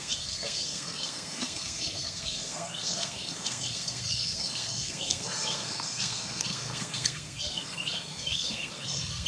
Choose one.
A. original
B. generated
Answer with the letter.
B